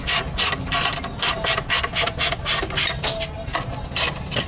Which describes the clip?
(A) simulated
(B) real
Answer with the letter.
B